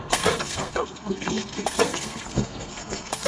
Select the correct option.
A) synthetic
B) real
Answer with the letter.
A